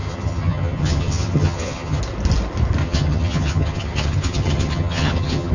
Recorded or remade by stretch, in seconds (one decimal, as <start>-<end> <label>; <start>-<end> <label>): 0.0-2.0 remade; 2.0-2.8 recorded; 2.8-5.5 remade